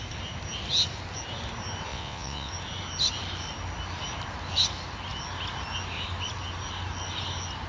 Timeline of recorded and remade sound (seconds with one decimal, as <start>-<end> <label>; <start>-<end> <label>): 0.0-1.9 recorded; 1.9-2.5 remade; 2.5-7.7 recorded